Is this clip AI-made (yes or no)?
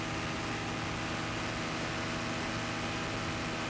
no